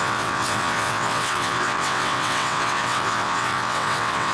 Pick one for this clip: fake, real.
fake